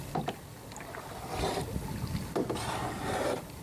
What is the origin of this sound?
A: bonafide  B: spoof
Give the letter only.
A